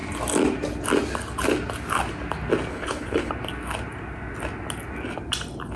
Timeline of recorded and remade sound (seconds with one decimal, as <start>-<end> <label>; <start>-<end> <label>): 0.0-2.7 recorded; 2.7-3.3 remade; 3.3-5.8 recorded